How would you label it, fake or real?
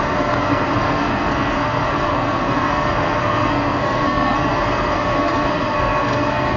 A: fake